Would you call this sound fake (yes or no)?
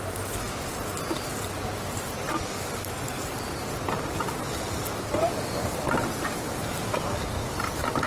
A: no